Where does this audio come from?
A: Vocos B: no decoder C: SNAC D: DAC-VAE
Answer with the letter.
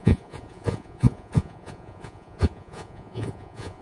A